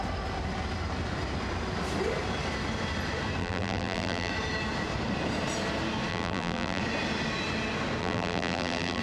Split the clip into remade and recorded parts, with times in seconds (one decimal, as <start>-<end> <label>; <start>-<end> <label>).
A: 0.0-3.4 recorded; 3.4-4.3 remade; 4.3-6.1 recorded; 6.1-6.8 remade; 6.8-8.0 recorded; 8.0-9.0 remade